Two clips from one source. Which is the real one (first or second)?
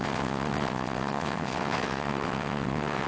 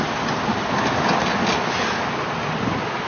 second